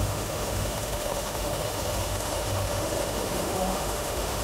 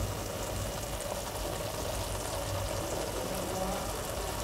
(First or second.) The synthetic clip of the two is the first